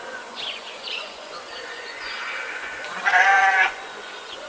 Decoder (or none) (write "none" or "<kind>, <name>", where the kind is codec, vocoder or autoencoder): vocoder, Vocos